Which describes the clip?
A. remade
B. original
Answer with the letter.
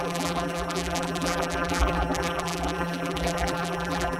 A